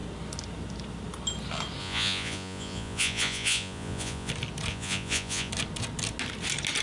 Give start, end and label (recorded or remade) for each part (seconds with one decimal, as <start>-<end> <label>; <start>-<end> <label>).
0.0-1.8 recorded; 1.8-4.3 remade; 4.3-4.7 recorded; 4.7-5.5 remade; 5.5-6.8 recorded